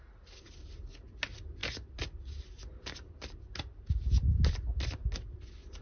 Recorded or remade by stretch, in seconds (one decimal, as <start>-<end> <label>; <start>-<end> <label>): 0.0-5.8 recorded